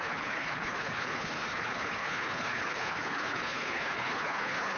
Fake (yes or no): yes